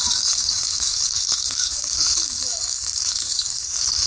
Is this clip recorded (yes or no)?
no